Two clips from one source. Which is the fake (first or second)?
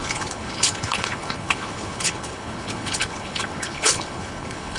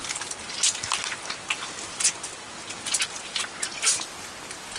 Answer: first